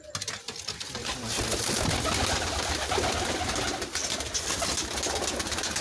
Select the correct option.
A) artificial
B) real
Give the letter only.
B